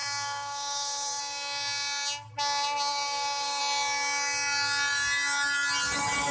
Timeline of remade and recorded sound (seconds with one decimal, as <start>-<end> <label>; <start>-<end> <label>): 0.0-1.2 remade; 1.2-2.9 recorded; 2.9-3.6 remade; 3.6-6.3 recorded